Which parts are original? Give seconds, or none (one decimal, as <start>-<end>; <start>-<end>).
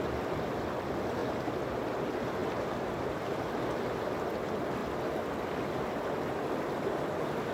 0.0-7.5